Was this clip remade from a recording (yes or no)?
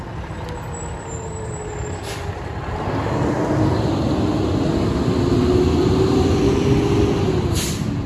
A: no